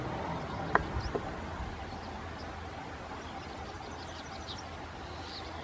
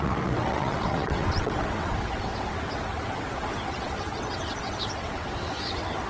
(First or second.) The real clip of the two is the first